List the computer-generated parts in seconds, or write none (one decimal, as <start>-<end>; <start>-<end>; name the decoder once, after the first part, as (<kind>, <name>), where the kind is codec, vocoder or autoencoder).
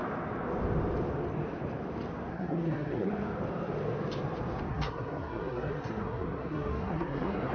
2.3-3.1 (codec, SNAC); 4.7-7.5